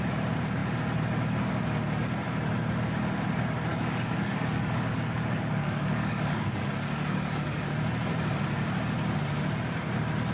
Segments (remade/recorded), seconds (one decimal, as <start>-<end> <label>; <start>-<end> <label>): 0.0-3.7 recorded; 3.7-7.7 remade; 7.7-10.3 recorded